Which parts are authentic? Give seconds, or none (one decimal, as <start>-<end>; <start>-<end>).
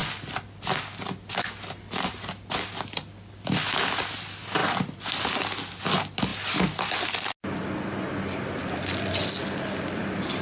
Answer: 0.0-10.4